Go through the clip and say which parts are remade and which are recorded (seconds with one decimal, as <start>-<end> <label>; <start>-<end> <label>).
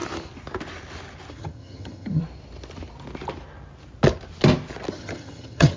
0.0-1.3 recorded; 1.3-2.2 remade; 2.2-4.9 recorded; 4.9-5.8 remade